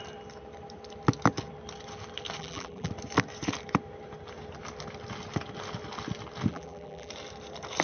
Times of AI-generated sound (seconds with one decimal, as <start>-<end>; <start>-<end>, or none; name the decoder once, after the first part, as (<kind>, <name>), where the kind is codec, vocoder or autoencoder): 2.4-2.9 (vocoder, BigVGAN v2); 6.5-7.1